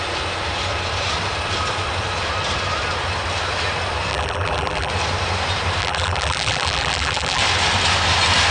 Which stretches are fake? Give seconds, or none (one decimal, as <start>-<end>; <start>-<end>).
4.1-4.9; 5.8-7.4